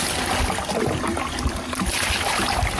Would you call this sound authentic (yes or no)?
yes